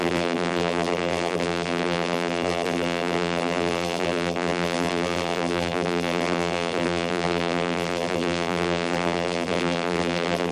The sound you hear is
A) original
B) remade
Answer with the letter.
B